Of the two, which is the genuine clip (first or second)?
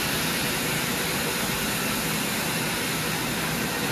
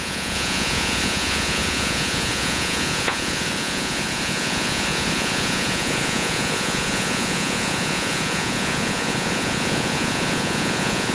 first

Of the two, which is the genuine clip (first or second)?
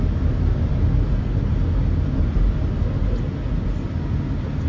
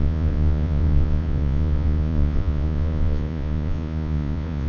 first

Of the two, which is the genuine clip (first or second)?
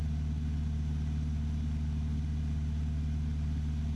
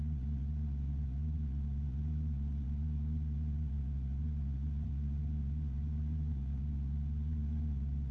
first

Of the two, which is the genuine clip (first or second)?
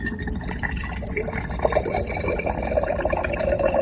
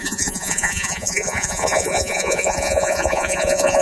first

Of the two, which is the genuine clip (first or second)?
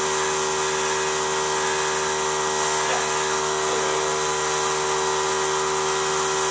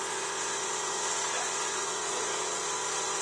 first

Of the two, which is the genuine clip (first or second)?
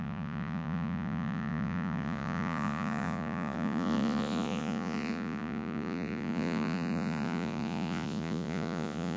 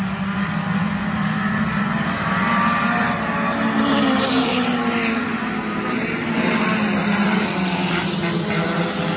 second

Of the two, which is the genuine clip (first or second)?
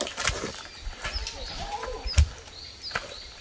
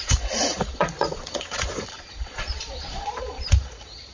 first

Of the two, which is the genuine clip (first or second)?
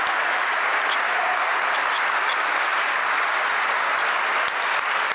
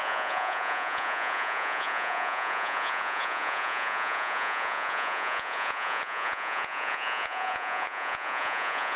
first